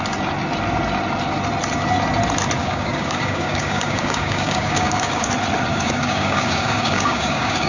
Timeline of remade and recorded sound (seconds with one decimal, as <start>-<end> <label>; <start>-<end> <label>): 0.0-2.6 recorded; 2.6-5.3 remade; 5.3-5.7 recorded; 5.7-7.7 remade